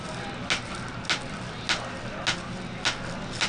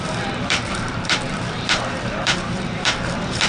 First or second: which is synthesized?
second